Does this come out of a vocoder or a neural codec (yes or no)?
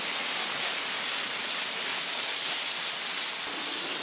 no